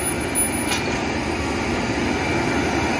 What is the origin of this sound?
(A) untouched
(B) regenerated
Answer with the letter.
A